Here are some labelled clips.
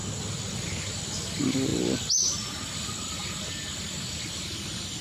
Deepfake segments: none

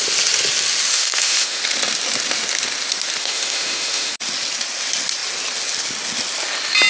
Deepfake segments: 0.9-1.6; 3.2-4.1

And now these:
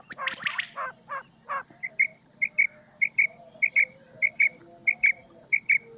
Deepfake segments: none